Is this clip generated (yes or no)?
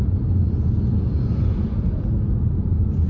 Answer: yes